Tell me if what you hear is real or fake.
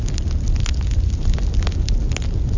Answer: real